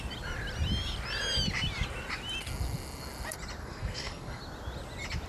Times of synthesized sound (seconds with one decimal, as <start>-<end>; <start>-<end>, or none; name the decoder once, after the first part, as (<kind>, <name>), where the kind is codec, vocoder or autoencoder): 3.6-4.4 (codec, SNAC)